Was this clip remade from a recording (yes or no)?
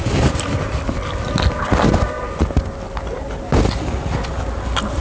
no